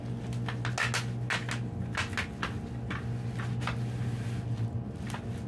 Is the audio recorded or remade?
recorded